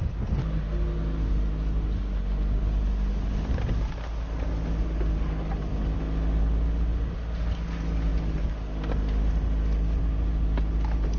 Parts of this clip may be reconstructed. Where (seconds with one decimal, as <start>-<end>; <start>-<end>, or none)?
none